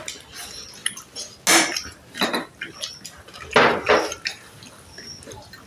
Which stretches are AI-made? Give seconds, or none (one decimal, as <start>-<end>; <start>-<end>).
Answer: none